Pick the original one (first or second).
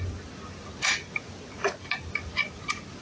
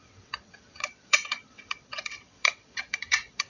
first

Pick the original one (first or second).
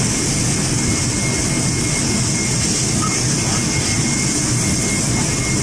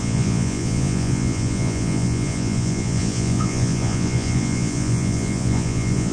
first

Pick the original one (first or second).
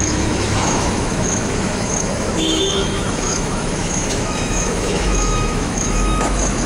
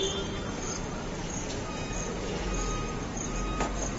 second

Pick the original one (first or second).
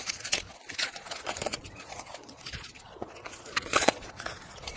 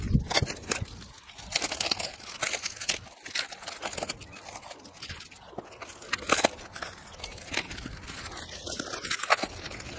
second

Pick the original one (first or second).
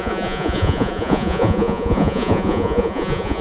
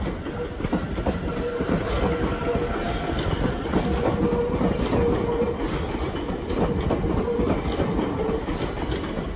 second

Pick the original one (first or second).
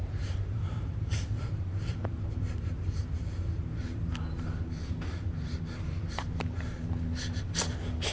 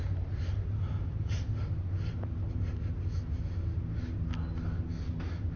second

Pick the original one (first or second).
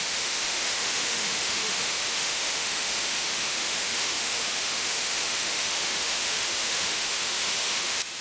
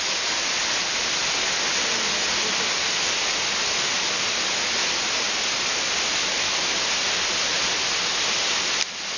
second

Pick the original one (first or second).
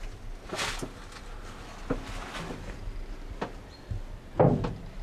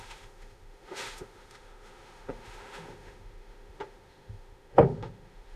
first